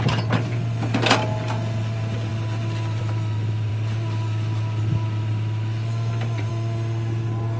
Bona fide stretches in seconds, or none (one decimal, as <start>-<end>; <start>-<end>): 0.0-7.6